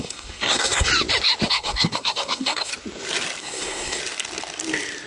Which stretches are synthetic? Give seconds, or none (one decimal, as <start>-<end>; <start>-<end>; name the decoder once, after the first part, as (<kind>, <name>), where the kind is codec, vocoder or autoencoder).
0.0-0.9 (codec, SNAC); 1.5-2.7; 3.4-4.0